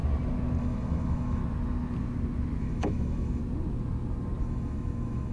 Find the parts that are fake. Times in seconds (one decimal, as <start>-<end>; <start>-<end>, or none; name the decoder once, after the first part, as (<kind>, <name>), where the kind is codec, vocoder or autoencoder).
0.6-1.4 (autoencoder, DAC-VAE); 2.6-3.4; 4.4-5.3

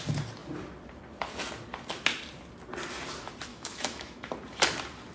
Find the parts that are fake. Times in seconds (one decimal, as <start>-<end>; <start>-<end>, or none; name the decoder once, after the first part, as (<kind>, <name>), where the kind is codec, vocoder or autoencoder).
3.5-4.3 (autoencoder, DAC-VAE)

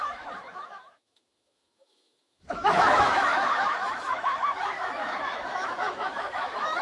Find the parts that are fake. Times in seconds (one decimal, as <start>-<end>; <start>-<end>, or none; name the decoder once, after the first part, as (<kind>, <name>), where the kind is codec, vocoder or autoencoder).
0.0-6.8 (autoencoder, DAC-VAE)

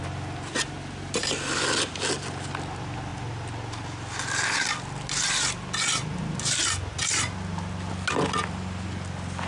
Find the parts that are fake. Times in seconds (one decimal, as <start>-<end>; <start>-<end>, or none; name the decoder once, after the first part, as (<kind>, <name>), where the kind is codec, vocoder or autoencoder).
none

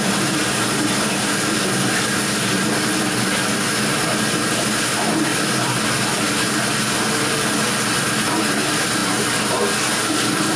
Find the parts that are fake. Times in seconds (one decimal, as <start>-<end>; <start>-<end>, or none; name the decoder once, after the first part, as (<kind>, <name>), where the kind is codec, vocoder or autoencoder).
none

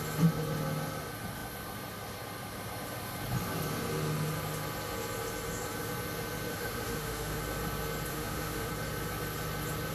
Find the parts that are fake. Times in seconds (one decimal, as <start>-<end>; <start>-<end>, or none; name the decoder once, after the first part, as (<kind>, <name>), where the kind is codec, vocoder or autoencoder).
6.5-7.4 (autoencoder, DAC-VAE); 8.1-8.7